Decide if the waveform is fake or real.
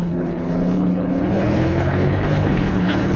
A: fake